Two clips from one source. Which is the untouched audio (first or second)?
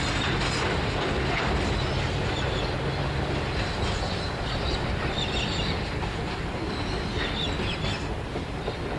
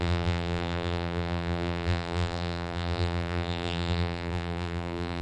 first